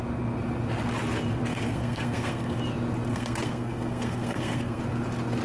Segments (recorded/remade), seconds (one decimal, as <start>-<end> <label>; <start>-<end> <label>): 0.0-1.5 recorded; 1.5-2.6 remade; 2.6-3.1 recorded; 3.1-4.8 remade; 4.8-5.4 recorded